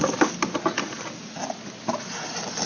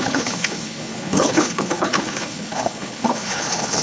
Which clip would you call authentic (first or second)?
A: first